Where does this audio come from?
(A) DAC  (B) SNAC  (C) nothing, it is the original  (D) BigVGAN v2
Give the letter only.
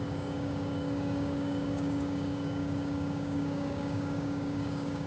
A